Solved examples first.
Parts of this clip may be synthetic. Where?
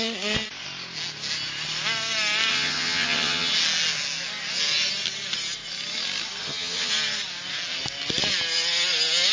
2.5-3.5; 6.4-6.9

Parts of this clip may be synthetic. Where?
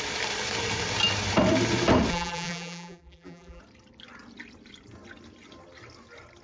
2.1-3.6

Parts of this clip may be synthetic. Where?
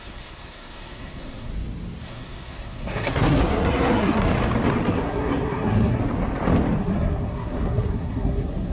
0.0-1.5; 2.0-4.3; 4.9-6.0; 6.8-8.7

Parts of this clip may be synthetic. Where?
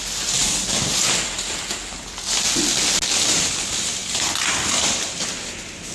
none